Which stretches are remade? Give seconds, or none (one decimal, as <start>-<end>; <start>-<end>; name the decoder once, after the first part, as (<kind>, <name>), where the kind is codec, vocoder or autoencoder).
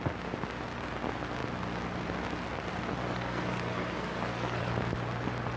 3.0-4.7 (codec, SNAC)